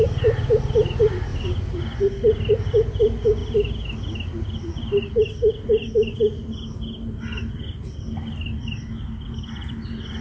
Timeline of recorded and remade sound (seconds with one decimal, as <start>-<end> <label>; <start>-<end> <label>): 0.0-10.2 recorded